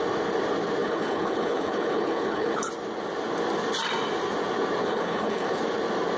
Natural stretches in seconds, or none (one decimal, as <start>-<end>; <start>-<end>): 0.0-0.8; 2.7-4.8; 5.6-6.2